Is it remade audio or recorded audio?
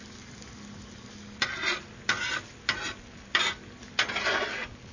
recorded